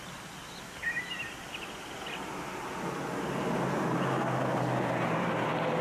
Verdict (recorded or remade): recorded